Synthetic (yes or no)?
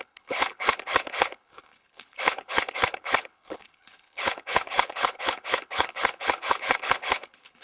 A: yes